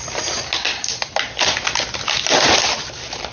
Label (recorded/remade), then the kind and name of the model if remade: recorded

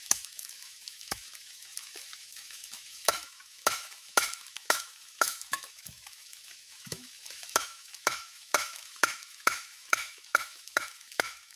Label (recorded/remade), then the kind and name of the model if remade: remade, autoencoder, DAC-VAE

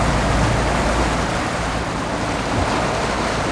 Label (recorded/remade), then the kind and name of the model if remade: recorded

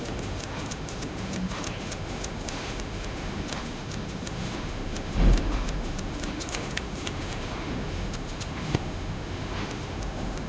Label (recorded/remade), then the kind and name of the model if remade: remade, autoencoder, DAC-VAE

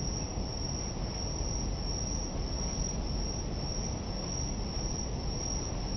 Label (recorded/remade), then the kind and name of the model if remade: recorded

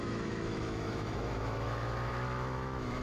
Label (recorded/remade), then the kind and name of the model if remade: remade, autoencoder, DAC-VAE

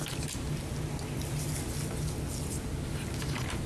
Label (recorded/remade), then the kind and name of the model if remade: recorded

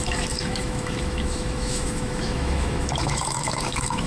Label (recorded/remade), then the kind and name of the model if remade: remade, autoencoder, DAC-VAE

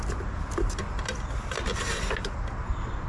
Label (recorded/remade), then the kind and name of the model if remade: recorded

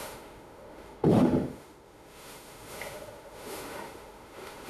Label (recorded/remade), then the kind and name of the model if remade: remade, autoencoder, DAC-VAE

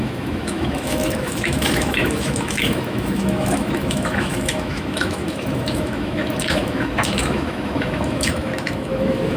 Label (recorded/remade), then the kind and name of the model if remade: remade, autoencoder, DAC-VAE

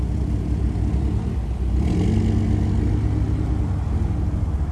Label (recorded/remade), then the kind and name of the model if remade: recorded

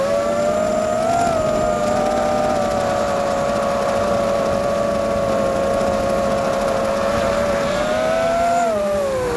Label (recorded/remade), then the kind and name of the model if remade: recorded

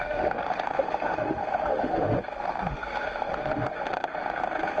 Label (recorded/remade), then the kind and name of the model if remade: remade, autoencoder, DAC-VAE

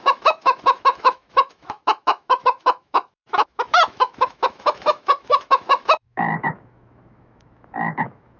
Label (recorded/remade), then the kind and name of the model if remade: remade, autoencoder, DAC-VAE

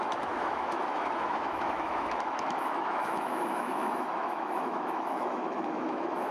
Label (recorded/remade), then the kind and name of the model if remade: remade, autoencoder, DAC-VAE